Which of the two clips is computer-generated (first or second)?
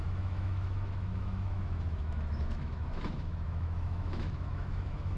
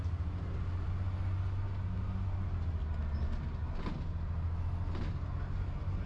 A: first